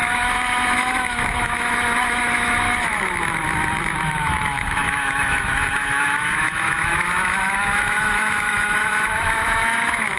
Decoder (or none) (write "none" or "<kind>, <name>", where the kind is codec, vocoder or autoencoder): autoencoder, DAC-VAE